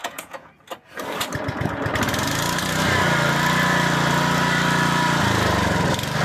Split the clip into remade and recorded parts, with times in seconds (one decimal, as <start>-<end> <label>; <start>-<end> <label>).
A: 0.0-0.5 remade; 0.5-6.2 recorded